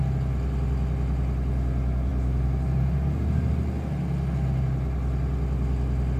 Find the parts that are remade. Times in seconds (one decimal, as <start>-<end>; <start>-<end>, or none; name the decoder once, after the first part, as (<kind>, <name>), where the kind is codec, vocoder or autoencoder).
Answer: none